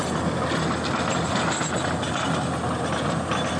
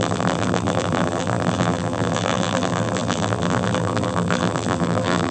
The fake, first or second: second